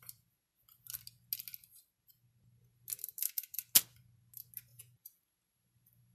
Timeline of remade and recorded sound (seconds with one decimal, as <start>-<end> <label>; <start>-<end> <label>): 0.0-4.7 recorded; 4.7-5.2 remade; 5.2-6.1 recorded